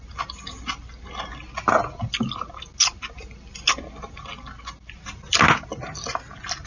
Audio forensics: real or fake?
real